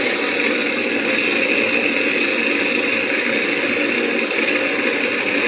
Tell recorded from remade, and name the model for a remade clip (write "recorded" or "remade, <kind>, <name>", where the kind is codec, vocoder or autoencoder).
recorded